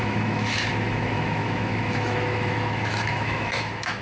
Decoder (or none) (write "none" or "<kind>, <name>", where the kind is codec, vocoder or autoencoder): autoencoder, DAC-VAE